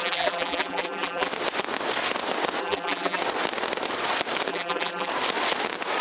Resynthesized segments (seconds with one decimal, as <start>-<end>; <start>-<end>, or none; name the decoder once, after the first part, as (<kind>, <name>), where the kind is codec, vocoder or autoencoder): 0.0-1.3 (vocoder, BigVGAN v2); 2.6-3.2; 4.5-5.1